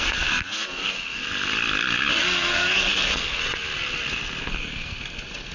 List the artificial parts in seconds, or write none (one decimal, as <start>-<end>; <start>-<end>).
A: 0.0-1.2; 2.2-3.4; 4.4-5.5